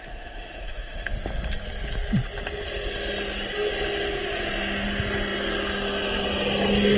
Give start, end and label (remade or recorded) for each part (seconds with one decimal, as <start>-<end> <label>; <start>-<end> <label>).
0.0-1.1 remade; 1.1-7.0 recorded